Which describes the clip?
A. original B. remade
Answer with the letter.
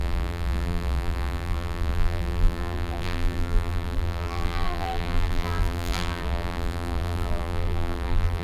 B